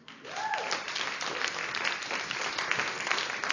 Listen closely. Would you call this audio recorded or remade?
recorded